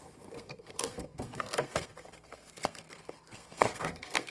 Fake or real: fake